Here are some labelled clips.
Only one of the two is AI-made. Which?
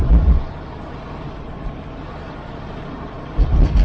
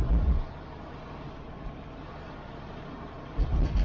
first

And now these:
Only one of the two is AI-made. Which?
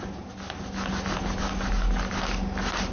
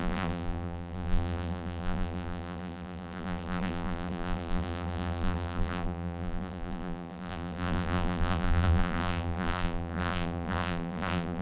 second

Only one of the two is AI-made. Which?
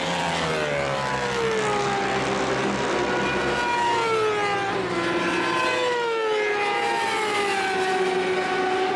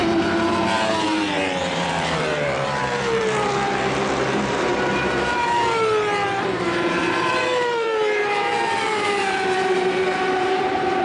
second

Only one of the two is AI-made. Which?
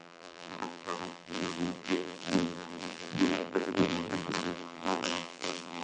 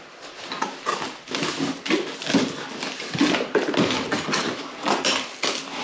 first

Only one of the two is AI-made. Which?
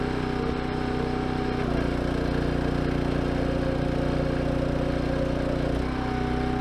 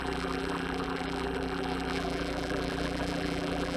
second